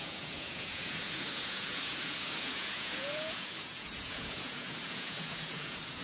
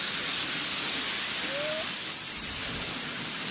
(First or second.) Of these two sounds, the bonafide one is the second